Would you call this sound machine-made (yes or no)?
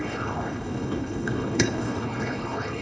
yes